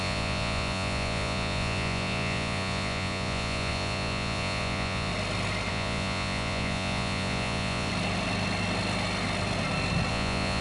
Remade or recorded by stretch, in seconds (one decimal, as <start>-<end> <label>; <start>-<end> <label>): 0.0-5.1 remade; 5.1-5.7 recorded; 5.7-7.9 remade; 7.9-10.1 recorded; 10.1-10.6 remade